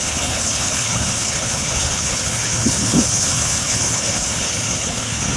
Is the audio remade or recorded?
remade